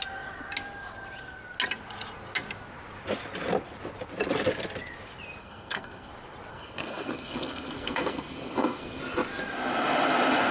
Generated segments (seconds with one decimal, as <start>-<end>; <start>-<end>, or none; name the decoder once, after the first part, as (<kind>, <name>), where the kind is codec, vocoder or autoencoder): 5.4-6.1 (codec, SNAC); 6.5-9.0